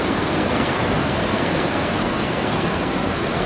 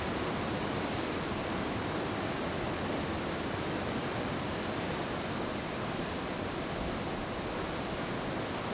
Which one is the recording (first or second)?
second